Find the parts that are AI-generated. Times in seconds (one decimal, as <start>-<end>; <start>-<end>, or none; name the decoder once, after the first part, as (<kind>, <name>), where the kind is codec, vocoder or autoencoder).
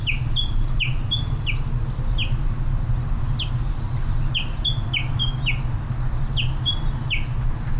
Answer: none